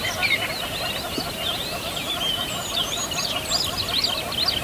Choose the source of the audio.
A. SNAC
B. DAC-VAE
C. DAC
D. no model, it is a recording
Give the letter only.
D